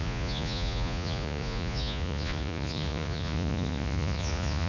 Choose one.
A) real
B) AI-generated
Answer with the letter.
B